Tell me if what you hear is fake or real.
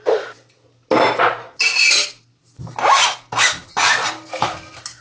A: real